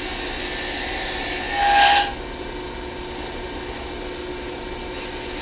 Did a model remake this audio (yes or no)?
no